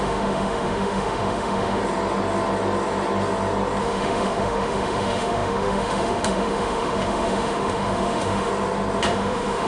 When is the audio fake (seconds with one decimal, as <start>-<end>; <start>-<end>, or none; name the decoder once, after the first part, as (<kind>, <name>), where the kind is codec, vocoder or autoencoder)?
0.0-1.8 (autoencoder, DAC-VAE); 3.8-8.5; 9.0-9.7